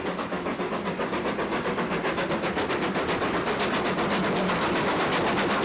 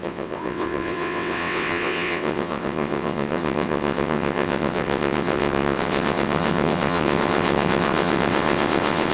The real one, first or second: first